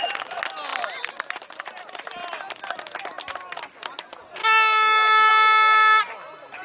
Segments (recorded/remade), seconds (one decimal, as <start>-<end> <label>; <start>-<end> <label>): 0.0-6.6 recorded